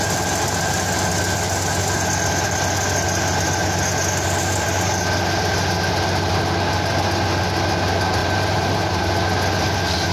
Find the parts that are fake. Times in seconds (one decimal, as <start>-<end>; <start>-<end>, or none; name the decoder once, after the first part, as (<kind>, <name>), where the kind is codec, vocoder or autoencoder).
8.2-9.0 (vocoder, BigVGAN v2)